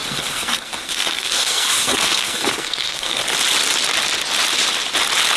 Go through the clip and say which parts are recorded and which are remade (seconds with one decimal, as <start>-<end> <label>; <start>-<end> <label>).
0.0-3.2 remade; 3.2-5.4 recorded